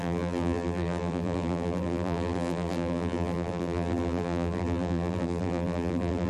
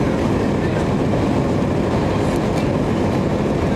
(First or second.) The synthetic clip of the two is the first